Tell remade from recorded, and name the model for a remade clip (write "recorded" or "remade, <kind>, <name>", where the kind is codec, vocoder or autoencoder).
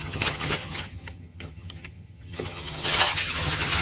remade, vocoder, HiFi-GAN